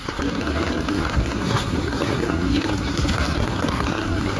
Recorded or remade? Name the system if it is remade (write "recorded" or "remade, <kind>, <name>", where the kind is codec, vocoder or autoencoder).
remade, codec, SNAC